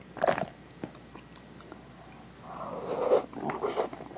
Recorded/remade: recorded